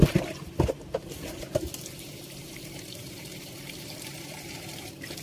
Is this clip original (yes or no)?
no